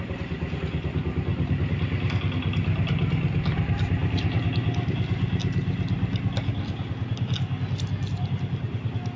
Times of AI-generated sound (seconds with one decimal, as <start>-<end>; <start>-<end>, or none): none